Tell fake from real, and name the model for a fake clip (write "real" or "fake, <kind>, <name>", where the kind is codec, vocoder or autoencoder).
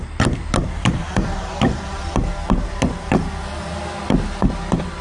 fake, vocoder, BigVGAN v2